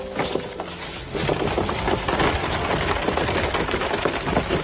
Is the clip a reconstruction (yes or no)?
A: no